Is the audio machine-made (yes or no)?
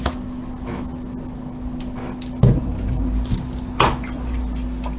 no